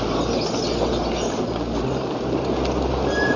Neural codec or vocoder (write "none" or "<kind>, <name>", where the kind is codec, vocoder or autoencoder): none